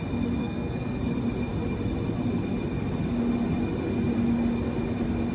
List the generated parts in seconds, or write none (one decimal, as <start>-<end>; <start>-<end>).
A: 0.4-1.0